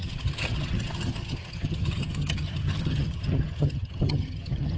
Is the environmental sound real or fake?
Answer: fake